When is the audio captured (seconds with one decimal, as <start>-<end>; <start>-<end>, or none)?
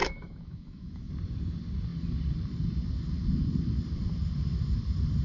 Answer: 1.1-5.2